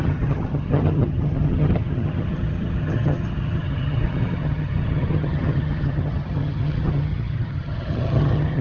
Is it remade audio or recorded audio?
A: remade